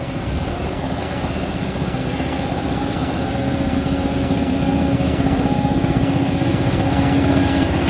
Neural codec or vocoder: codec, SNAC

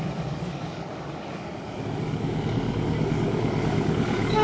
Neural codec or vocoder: codec, DAC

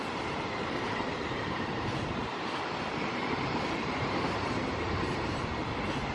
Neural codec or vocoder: vocoder, BigVGAN v2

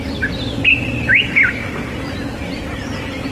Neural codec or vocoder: vocoder, BigVGAN v2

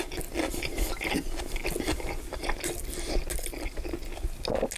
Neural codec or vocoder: none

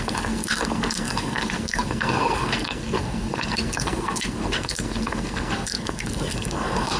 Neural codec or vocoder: codec, SNAC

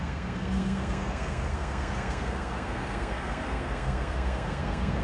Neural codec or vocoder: codec, SNAC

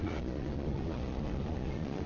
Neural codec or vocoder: vocoder, Vocos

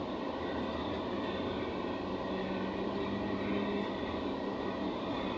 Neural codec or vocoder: none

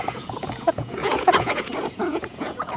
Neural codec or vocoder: vocoder, Vocos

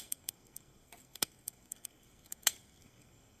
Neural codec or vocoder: codec, SNAC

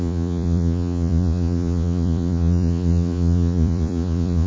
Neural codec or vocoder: vocoder, Vocos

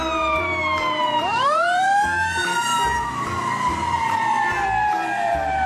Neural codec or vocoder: vocoder, BigVGAN v2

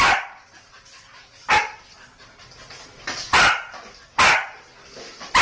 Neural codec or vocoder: none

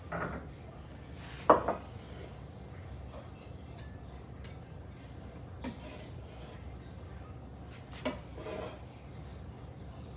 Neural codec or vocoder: none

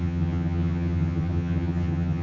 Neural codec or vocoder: vocoder, HiFi-GAN